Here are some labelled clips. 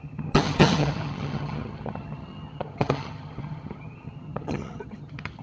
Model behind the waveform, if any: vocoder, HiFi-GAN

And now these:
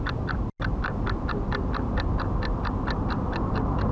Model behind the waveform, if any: none